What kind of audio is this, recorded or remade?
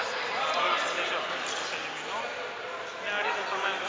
recorded